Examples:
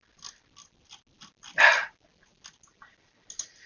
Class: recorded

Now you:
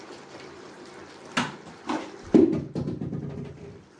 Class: recorded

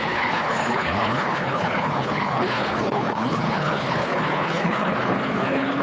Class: remade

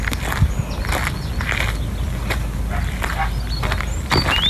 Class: recorded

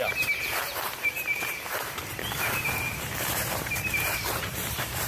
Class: remade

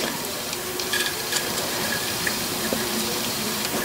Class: remade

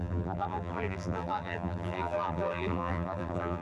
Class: remade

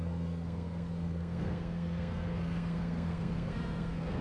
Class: remade